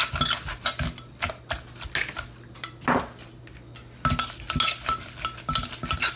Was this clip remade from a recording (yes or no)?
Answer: no